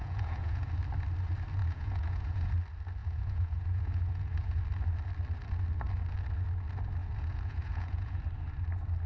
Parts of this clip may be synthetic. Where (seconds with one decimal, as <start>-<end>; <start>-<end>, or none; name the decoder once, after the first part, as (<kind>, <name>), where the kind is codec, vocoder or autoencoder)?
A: 0.0-0.7 (vocoder, Vocos); 1.6-2.5; 3.0-4.6; 7.0-8.2